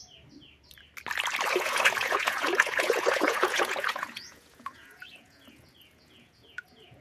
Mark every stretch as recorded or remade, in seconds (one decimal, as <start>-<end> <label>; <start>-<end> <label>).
0.0-1.5 recorded; 1.5-7.0 remade